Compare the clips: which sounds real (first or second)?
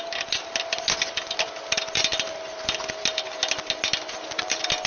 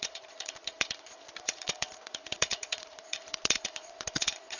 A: first